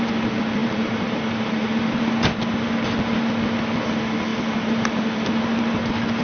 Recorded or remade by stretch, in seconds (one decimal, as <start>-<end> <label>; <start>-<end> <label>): 0.0-0.6 recorded; 0.6-2.1 remade; 2.1-6.2 recorded